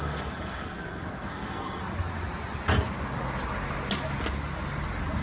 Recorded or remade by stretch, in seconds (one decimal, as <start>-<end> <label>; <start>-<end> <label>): 0.0-1.8 remade; 1.8-5.2 recorded